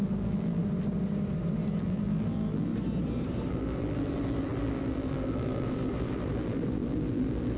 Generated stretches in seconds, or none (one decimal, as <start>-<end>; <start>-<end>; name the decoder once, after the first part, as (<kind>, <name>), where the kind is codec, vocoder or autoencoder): 0.0-0.6 (vocoder, BigVGAN v2); 1.8-2.7; 3.5-7.6